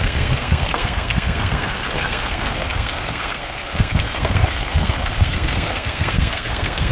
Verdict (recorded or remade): remade